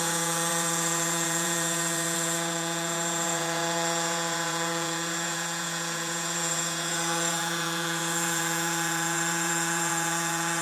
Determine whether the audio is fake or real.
fake